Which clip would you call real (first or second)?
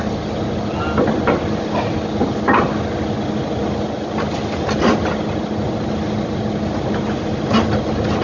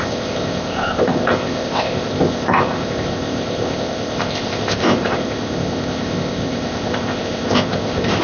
first